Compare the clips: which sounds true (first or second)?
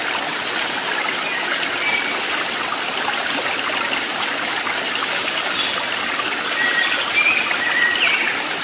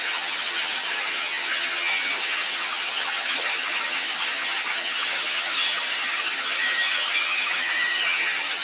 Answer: first